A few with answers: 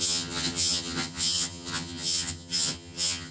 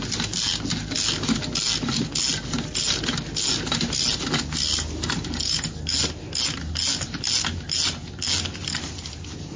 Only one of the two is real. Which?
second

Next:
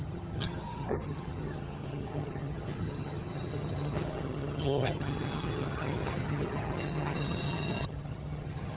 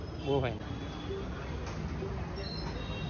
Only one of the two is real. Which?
second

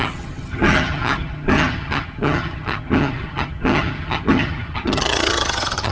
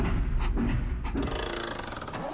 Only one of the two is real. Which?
second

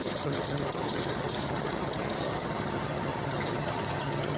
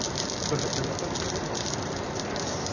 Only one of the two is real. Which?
second